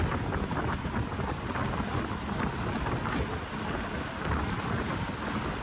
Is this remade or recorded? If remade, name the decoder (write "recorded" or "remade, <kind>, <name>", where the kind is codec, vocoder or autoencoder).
recorded